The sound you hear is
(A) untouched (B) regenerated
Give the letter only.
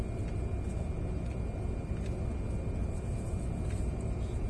A